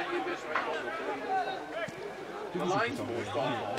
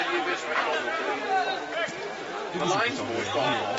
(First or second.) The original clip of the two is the second